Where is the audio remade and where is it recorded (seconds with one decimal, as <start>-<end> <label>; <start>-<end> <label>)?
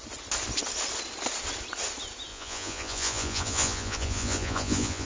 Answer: 0.0-2.3 recorded; 2.3-5.1 remade